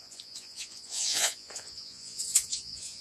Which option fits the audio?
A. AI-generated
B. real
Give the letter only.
A